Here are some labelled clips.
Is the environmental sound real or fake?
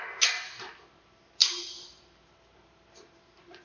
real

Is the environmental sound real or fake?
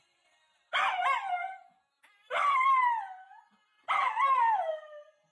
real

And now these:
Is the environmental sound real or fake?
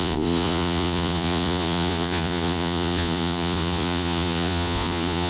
fake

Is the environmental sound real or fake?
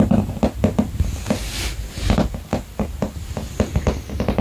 real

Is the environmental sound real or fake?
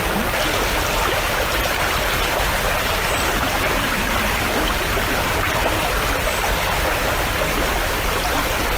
real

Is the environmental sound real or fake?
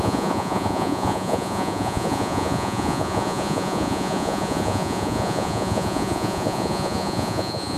fake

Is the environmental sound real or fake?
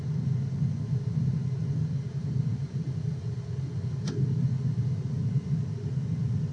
real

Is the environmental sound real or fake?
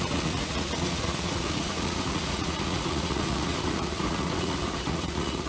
fake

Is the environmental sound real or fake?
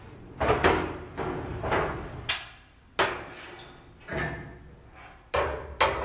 real